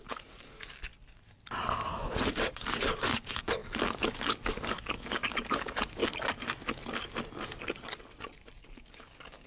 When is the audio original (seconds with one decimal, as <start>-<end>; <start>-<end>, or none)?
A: 0.9-2.3; 6.0-8.6